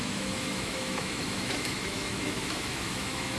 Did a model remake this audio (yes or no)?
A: yes